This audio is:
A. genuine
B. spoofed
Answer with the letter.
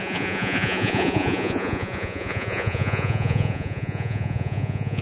B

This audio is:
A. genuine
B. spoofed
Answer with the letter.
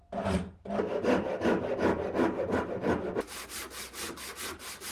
A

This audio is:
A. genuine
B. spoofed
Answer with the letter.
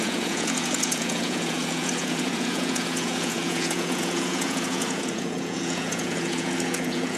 B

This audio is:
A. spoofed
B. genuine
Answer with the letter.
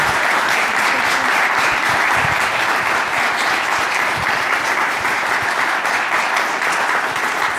A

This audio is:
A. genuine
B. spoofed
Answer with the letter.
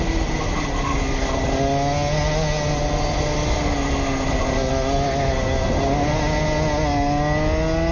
A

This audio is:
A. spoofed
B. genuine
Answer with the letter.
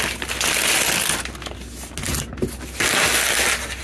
B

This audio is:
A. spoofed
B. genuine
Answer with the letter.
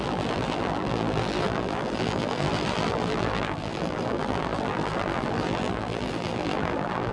A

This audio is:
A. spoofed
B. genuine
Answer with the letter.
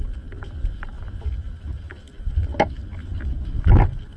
B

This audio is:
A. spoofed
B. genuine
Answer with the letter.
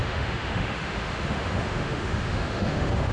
A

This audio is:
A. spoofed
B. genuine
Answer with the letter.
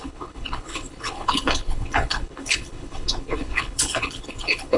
A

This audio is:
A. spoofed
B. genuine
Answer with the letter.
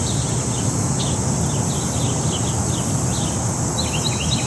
B